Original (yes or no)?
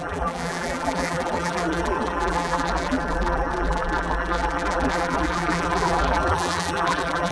no